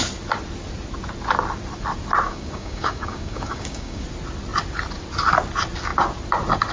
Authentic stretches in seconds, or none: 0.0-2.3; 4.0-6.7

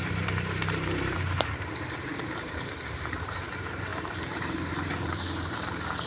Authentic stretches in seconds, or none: none

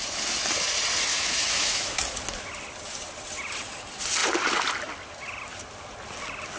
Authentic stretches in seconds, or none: 0.0-1.1; 2.0-6.6